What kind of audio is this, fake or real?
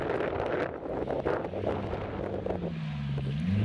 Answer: real